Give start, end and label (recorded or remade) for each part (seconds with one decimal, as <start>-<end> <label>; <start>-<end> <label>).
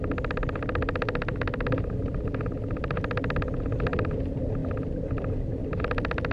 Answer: 0.0-6.3 recorded